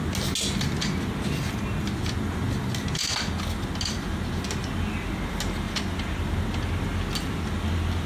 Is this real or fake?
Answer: real